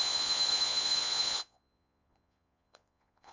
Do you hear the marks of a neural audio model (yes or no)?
yes